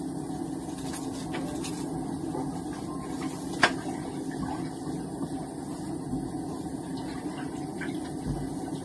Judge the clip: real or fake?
real